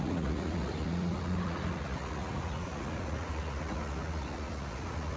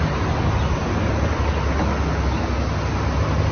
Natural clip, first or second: second